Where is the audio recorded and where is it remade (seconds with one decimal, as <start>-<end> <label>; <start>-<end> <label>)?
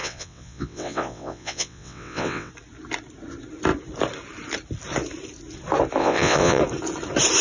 0.0-2.5 remade; 2.5-6.0 recorded; 6.0-6.6 remade; 6.6-7.4 recorded